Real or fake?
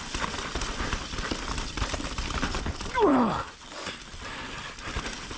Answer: fake